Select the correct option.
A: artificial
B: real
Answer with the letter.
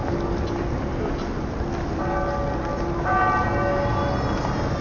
B